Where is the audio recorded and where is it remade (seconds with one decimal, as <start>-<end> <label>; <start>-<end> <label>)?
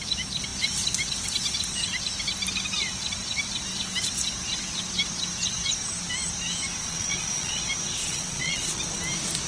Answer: 0.0-6.8 recorded; 6.8-7.6 remade; 7.6-8.0 recorded; 8.0-8.8 remade; 8.8-9.5 recorded